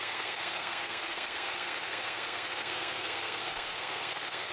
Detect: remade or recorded remade